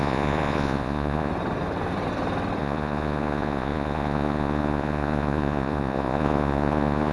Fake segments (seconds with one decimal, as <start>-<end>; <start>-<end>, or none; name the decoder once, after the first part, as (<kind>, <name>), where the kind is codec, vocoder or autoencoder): 0.0-1.3 (vocoder, Vocos); 2.6-7.1